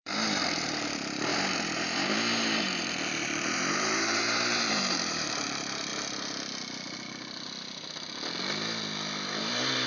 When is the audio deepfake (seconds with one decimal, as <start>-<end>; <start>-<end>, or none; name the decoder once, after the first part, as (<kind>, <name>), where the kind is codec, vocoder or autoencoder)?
0.0-5.9 (vocoder, BigVGAN v2); 9.4-9.9